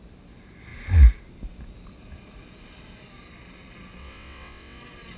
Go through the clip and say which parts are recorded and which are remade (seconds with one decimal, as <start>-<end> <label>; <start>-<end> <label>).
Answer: 0.0-4.0 recorded; 4.0-4.8 remade; 4.8-5.2 recorded